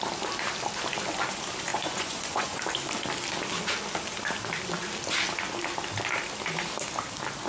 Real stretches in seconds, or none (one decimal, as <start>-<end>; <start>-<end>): 0.0-1.7; 2.6-7.5